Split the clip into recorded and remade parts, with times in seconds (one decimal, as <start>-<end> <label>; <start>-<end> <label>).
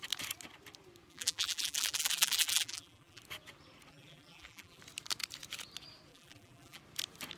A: 0.0-1.1 recorded; 1.1-3.2 remade; 3.2-3.9 recorded; 3.9-4.8 remade; 4.8-6.1 recorded; 6.1-6.8 remade; 6.8-7.4 recorded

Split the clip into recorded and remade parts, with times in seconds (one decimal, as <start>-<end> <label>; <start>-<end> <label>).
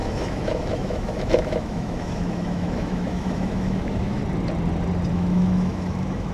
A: 0.0-4.2 remade; 4.2-5.1 recorded; 5.1-6.3 remade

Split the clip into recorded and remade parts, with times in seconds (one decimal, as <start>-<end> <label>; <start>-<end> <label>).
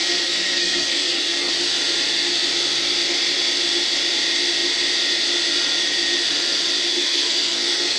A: 0.0-1.5 remade; 1.5-6.9 recorded; 6.9-8.0 remade